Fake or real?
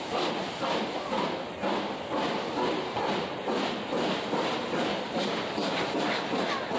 real